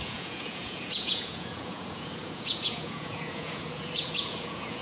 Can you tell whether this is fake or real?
fake